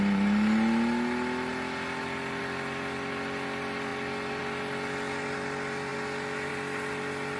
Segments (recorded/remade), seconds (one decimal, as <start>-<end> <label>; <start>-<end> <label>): 0.0-7.4 recorded